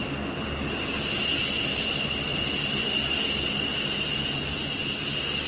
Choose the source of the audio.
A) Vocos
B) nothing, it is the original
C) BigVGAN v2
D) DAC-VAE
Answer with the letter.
B